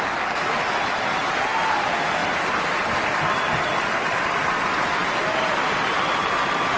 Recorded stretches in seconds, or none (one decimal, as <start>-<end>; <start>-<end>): 0.0-6.8